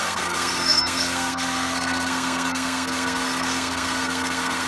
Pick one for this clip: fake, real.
fake